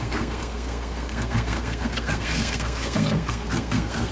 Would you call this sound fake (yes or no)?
yes